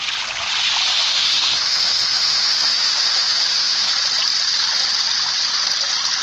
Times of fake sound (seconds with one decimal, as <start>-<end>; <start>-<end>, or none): 0.9-3.9